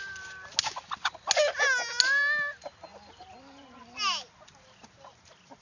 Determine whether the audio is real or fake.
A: real